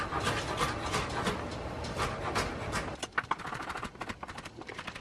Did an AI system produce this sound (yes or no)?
no